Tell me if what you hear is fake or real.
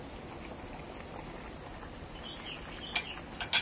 real